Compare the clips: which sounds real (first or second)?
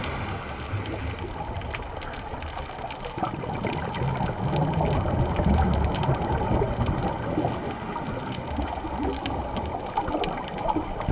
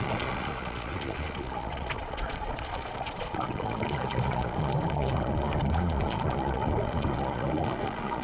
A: first